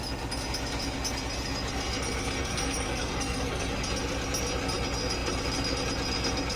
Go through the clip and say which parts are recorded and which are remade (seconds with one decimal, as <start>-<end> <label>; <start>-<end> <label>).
0.0-2.4 recorded; 2.4-3.8 remade; 3.8-6.6 recorded